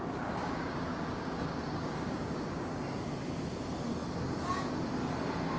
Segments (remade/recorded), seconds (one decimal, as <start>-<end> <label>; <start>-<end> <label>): 0.0-2.6 remade; 2.6-5.6 recorded

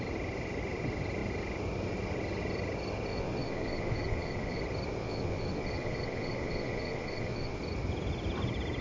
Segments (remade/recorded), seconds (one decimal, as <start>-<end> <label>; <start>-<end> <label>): 0.0-3.1 recorded; 3.1-4.6 remade; 4.6-5.0 recorded; 5.0-7.6 remade; 7.6-8.8 recorded

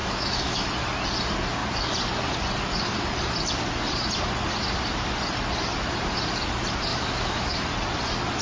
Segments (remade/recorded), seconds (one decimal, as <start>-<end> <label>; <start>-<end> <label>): 0.0-0.7 remade; 0.7-6.9 recorded; 6.9-7.5 remade; 7.5-8.4 recorded